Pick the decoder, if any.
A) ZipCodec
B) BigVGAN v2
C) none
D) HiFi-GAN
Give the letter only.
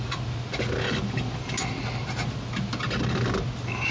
C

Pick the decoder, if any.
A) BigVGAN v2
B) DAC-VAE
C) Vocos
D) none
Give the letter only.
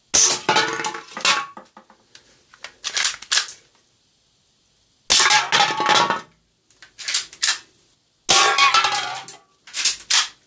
D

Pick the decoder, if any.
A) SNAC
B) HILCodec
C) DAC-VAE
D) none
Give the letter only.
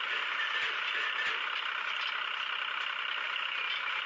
D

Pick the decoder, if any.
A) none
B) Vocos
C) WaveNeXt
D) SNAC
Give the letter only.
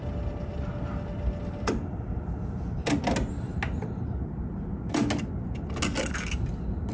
A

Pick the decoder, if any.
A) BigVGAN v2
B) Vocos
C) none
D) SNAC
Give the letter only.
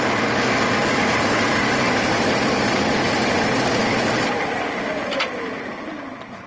C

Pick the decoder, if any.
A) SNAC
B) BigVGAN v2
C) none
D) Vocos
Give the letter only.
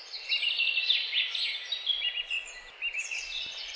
C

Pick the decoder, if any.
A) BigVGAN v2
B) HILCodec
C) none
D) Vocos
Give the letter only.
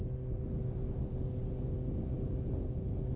C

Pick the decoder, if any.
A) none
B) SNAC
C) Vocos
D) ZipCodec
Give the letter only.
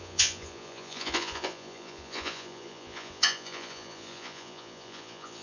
C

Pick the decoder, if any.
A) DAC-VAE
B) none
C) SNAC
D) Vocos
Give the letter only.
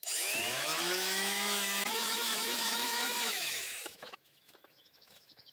A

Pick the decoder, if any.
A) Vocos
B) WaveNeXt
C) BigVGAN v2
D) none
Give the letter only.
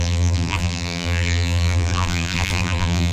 C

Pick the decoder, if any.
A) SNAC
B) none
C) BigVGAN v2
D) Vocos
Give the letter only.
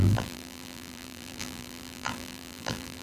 C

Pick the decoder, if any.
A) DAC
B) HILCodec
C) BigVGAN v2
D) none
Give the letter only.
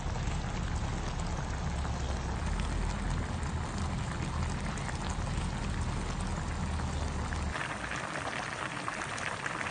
D